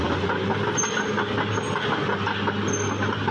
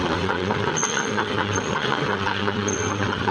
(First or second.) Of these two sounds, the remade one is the second